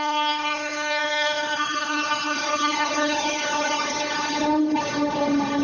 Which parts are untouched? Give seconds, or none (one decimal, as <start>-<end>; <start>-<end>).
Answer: none